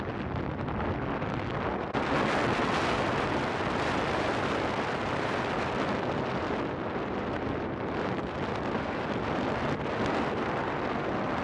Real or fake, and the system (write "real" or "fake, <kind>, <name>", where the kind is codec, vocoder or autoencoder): real